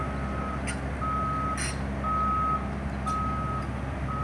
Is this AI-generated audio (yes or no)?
no